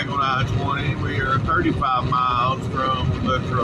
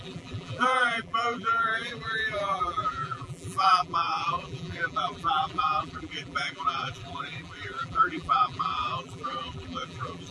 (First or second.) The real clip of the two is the first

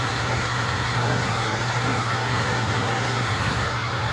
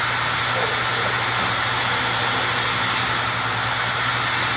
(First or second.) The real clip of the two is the second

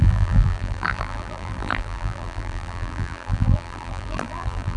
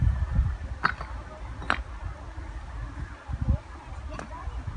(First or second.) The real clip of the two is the second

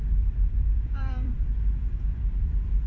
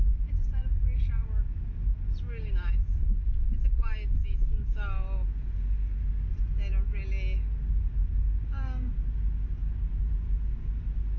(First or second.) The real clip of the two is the second